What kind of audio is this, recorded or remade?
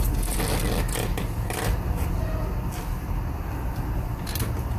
recorded